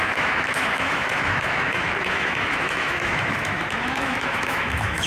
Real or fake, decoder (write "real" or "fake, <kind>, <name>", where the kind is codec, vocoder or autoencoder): fake, autoencoder, DAC-VAE